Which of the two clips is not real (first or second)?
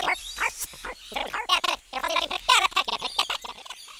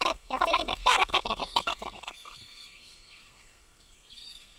second